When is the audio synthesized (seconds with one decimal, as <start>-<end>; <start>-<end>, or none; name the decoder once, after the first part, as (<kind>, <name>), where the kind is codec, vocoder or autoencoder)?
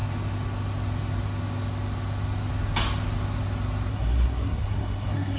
3.9-5.4 (codec, SNAC)